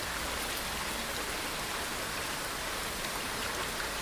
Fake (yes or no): no